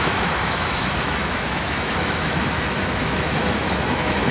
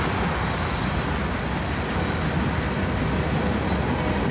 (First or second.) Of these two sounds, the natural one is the second